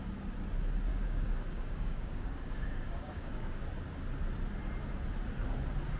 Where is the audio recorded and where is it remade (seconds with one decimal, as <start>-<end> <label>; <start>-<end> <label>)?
0.0-0.9 recorded; 0.9-3.6 remade; 3.6-6.0 recorded

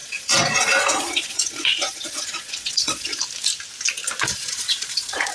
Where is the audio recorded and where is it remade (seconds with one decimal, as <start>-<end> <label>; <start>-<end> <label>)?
0.0-3.2 remade; 3.2-4.3 recorded; 4.3-5.3 remade

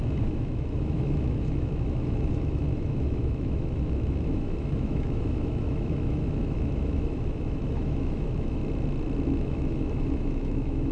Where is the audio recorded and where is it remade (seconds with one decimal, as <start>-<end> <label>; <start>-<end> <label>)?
0.0-8.6 remade; 8.6-9.4 recorded; 9.4-10.9 remade